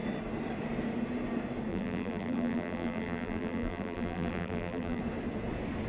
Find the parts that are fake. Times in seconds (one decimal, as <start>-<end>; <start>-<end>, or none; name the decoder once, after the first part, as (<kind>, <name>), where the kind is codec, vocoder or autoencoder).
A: 1.7-5.0 (vocoder, BigVGAN v2)